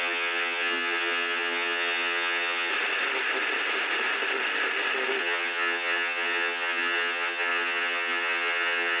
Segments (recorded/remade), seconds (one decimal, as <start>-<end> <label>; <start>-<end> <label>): 0.0-2.7 remade; 2.7-5.2 recorded; 5.2-9.0 remade